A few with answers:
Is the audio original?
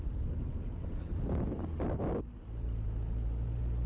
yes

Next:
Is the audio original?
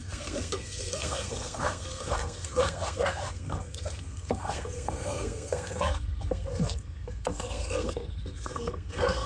no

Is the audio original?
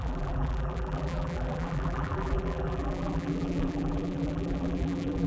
no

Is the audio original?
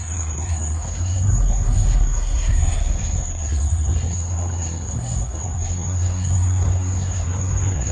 no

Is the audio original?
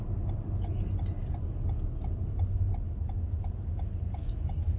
yes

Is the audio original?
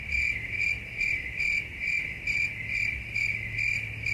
yes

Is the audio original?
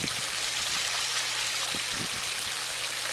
yes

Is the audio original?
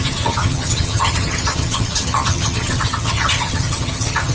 no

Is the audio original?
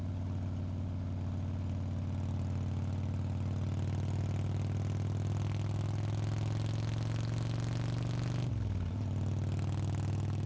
yes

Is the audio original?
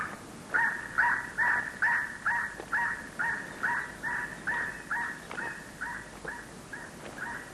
yes